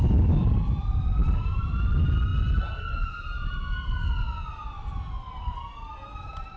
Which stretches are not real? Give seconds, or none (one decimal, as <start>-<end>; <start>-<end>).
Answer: none